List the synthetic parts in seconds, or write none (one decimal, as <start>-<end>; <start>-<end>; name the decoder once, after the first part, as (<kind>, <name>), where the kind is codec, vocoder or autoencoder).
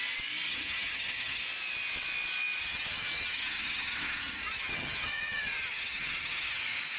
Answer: 0.5-1.4 (vocoder, HiFi-GAN); 2.6-6.6